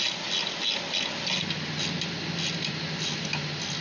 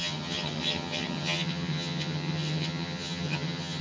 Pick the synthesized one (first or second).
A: second